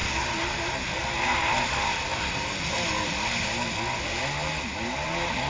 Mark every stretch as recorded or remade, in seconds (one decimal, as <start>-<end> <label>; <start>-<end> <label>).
0.0-5.5 recorded